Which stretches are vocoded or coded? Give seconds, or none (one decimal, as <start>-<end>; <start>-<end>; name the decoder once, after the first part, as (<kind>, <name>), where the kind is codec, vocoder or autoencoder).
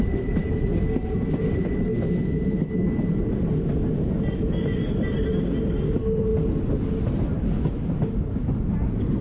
none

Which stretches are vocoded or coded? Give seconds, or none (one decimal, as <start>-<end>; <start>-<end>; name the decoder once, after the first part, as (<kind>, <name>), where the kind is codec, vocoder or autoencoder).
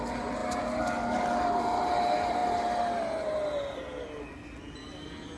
none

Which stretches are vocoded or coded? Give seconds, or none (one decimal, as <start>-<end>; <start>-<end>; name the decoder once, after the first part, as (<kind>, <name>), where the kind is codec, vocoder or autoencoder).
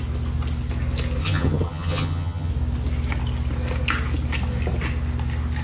1.2-2.5 (vocoder, HiFi-GAN)